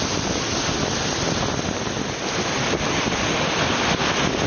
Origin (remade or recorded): recorded